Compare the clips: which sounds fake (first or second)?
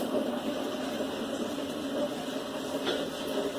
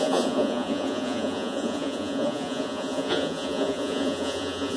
second